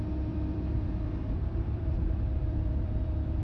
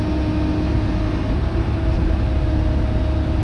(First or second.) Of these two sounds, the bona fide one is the second